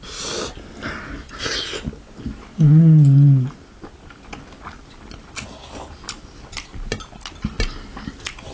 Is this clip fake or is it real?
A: real